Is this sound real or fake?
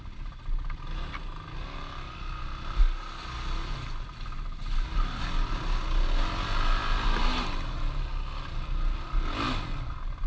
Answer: real